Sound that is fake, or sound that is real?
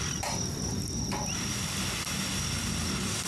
real